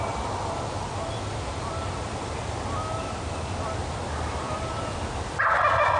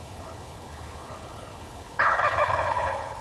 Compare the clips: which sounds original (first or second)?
first